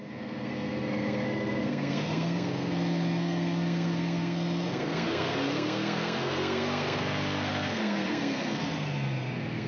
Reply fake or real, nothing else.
fake